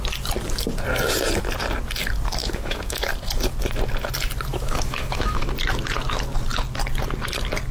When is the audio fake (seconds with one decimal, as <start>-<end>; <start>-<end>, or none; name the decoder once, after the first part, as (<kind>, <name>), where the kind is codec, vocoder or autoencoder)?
2.4-3.1 (autoencoder, DAC-VAE); 4.5-5.5